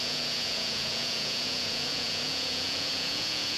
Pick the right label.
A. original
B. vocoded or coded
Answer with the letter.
B